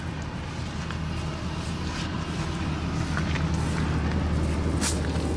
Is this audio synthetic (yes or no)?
no